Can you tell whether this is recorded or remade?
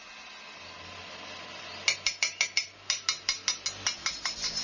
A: recorded